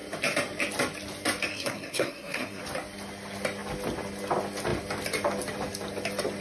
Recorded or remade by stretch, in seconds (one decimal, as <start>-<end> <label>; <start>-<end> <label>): 0.0-1.5 recorded; 1.5-2.6 remade; 2.6-6.4 recorded